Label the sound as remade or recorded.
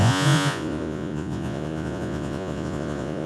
remade